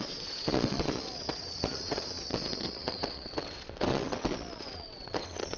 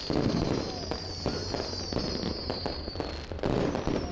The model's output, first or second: first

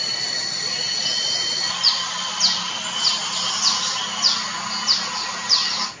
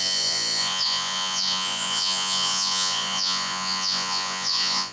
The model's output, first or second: second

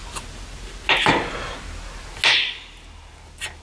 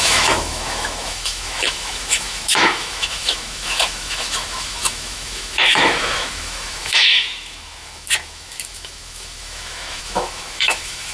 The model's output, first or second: second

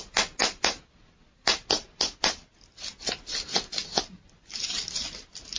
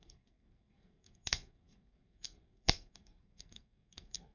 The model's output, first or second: second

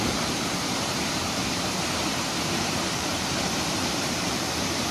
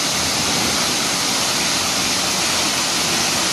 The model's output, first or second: first